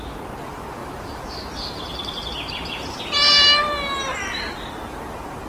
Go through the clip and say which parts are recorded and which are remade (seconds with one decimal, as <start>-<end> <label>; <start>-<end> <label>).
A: 0.0-0.8 recorded; 0.8-3.0 remade; 3.0-5.5 recorded